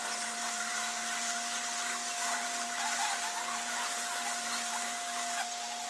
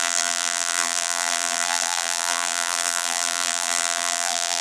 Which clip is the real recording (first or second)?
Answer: first